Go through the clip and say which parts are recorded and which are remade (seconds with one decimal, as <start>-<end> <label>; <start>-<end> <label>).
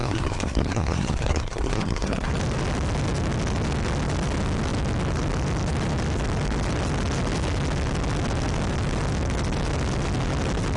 0.0-2.3 remade; 2.3-10.8 recorded